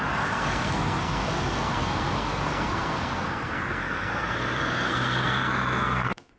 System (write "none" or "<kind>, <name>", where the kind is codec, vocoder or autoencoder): codec, SNAC